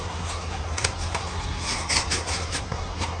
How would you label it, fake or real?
fake